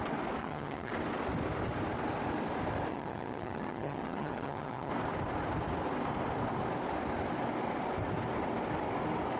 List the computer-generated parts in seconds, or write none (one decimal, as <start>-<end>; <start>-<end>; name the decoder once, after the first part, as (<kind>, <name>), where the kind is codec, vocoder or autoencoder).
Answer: 0.4-0.9 (vocoder, HiFi-GAN); 2.9-4.9